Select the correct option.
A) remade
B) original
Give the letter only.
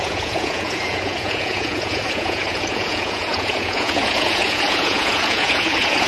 A